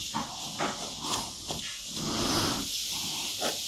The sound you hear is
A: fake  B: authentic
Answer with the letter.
B